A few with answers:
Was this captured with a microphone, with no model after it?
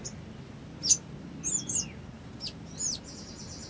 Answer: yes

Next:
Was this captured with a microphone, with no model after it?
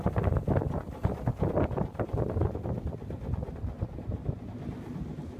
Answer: yes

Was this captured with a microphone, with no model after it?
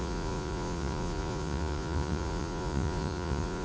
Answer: no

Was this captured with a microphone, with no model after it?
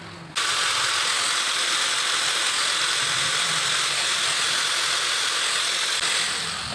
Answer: yes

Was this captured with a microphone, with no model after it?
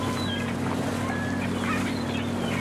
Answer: yes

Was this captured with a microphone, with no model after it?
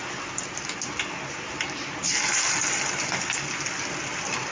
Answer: yes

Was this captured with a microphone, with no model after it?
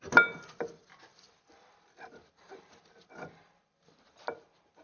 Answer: yes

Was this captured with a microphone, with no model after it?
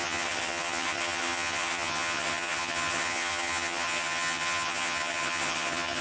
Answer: no